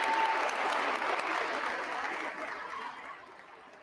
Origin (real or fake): real